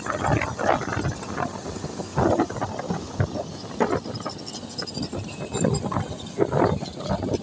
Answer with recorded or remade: recorded